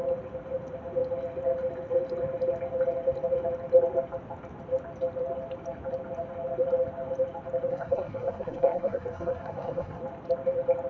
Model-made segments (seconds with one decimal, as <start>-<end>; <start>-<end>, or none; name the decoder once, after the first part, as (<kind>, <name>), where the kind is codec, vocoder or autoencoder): 7.7-10.0 (codec, SNAC)